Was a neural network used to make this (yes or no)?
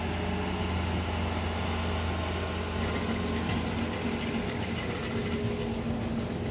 no